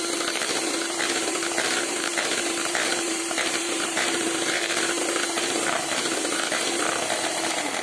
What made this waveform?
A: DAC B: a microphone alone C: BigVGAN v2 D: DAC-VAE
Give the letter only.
C